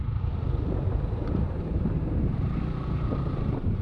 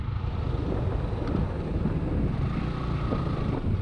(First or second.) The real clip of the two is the second